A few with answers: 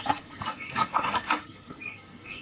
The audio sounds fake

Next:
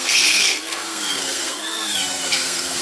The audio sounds fake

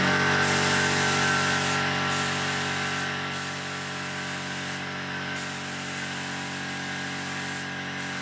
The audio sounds real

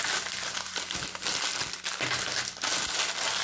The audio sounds real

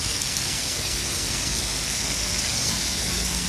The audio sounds fake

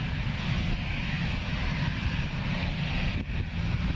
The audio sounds real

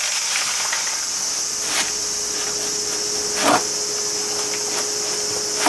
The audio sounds real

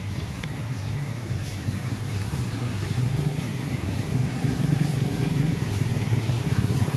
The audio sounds fake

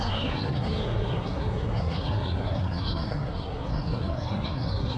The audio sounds fake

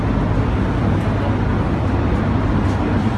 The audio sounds real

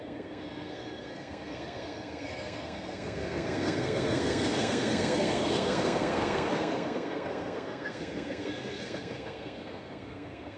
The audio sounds fake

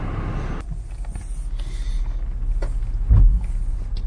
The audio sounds real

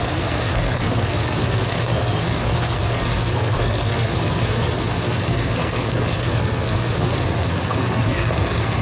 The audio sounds fake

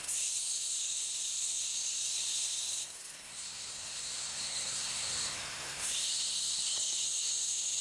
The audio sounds fake